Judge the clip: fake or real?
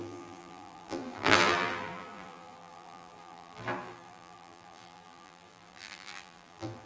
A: fake